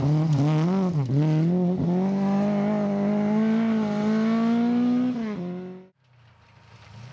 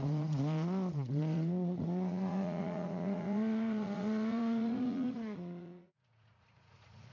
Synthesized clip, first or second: second